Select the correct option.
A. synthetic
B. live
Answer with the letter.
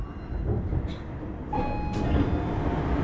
B